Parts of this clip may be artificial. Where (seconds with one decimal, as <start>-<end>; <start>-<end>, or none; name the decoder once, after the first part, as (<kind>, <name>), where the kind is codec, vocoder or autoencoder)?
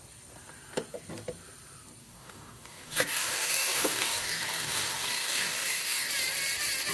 2.0-6.1 (codec, DAC)